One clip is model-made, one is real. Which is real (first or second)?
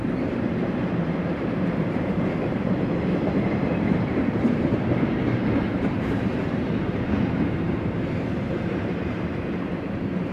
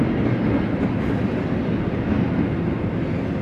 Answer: second